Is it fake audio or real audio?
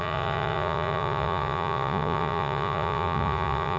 fake